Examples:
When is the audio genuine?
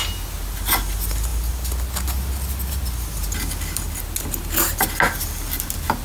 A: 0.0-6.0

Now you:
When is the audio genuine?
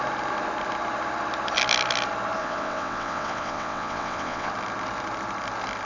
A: 0.0-2.4; 4.5-5.9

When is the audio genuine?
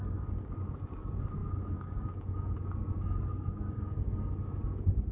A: none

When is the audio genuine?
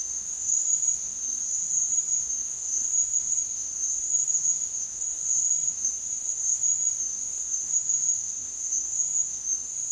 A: 1.4-2.1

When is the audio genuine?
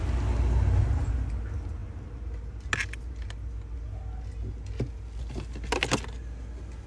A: 0.0-6.9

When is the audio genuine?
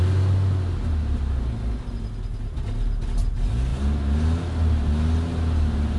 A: 0.0-6.0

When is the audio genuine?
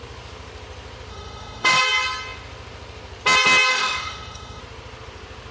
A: 0.0-1.1; 1.8-3.7; 4.6-5.5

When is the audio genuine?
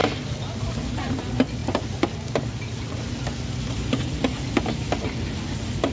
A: 0.0-5.9